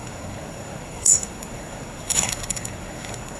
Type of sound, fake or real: fake